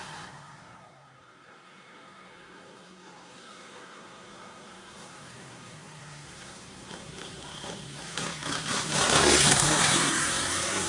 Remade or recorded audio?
remade